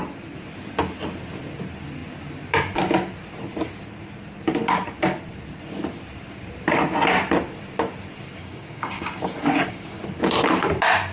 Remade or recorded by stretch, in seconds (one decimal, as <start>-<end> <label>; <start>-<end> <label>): 0.0-8.4 recorded; 8.4-10.0 remade; 10.0-11.1 recorded